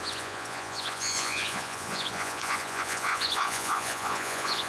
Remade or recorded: remade